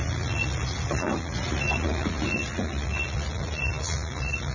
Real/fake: fake